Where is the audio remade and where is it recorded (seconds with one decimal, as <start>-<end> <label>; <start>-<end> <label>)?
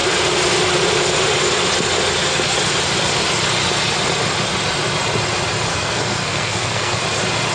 0.0-5.7 recorded; 5.7-7.0 remade; 7.0-7.5 recorded